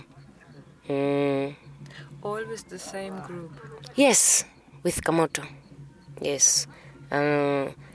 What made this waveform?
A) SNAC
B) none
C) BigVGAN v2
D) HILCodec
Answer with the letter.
B